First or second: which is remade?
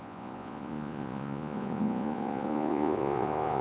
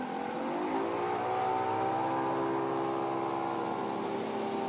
first